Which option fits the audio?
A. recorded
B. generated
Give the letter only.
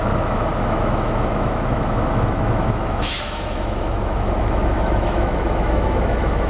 B